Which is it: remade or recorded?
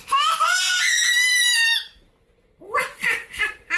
recorded